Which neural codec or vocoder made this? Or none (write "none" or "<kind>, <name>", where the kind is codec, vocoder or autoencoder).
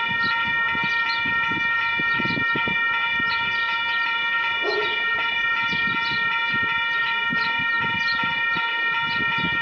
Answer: none